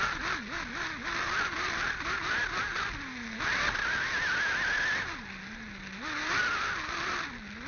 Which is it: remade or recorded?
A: recorded